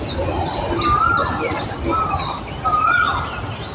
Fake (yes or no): no